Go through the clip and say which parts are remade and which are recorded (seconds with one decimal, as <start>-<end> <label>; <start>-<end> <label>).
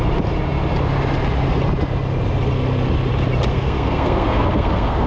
0.0-3.5 recorded; 3.5-5.1 remade